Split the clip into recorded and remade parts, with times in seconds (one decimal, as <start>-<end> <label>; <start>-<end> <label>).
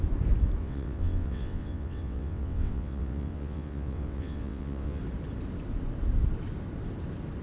0.0-0.6 recorded; 0.6-5.0 remade; 5.0-7.4 recorded